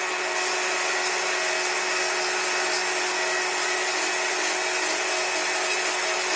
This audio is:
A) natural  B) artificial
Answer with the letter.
A